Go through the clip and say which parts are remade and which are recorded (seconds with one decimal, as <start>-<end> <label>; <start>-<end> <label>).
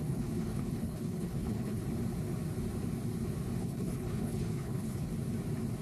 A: 0.0-1.8 remade; 1.8-3.6 recorded; 3.6-5.1 remade; 5.1-5.8 recorded